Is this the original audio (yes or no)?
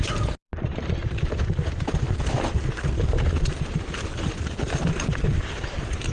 no